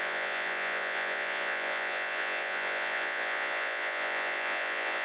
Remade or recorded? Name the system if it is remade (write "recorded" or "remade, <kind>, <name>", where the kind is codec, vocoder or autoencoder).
remade, vocoder, Vocos